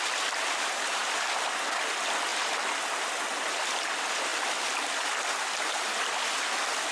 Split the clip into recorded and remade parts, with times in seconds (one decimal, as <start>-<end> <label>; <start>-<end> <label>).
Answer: 0.0-6.9 recorded